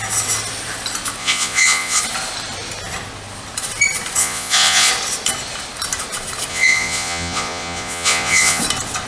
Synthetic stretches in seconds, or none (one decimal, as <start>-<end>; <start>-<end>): 1.2-2.0; 4.2-4.9; 6.5-8.6